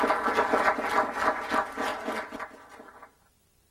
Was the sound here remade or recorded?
recorded